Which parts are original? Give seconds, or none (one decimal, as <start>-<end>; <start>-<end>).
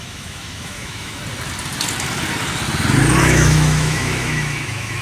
1.2-3.2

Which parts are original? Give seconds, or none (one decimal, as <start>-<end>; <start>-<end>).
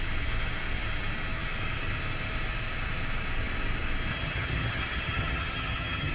0.0-4.1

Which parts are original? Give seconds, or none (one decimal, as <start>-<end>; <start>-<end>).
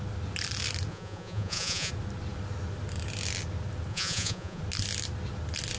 0.0-0.9; 1.9-3.9; 4.6-5.8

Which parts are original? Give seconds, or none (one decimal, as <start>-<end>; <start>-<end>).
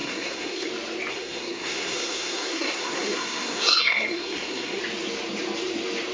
0.7-1.1; 4.8-6.1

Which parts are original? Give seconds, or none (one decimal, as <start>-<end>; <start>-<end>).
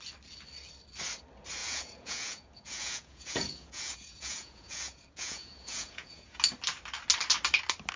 0.0-1.6; 6.4-8.0